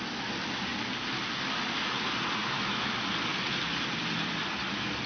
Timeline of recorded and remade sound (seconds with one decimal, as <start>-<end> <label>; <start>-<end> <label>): 0.0-2.4 recorded; 2.4-2.9 remade; 2.9-5.1 recorded